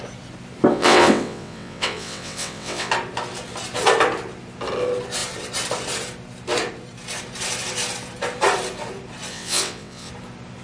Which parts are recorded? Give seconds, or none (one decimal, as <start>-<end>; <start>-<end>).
0.0-0.7; 2.9-9.3; 10.1-10.6